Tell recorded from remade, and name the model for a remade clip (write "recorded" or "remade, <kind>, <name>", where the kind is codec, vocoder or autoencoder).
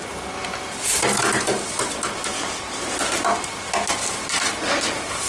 recorded